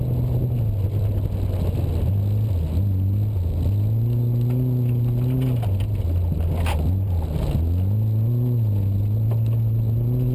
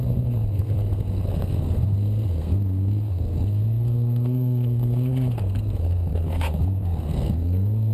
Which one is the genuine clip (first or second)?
first